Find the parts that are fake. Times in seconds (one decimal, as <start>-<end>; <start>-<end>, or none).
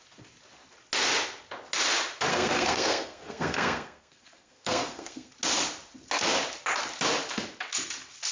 2.3-5.3